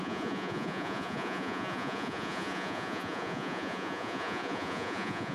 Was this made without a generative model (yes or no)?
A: no